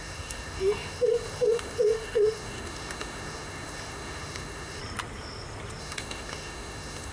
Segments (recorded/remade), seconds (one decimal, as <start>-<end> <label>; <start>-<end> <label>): 0.0-4.8 remade; 4.8-5.8 recorded; 5.8-7.1 remade